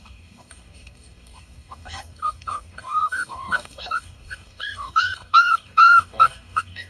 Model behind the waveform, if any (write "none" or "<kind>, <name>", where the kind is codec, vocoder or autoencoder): codec, DAC